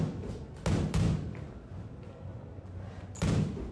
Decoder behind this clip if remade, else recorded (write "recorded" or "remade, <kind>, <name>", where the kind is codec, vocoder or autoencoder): recorded